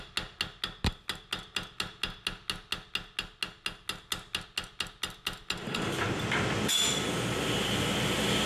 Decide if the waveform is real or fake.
real